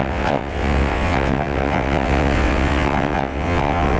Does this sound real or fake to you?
fake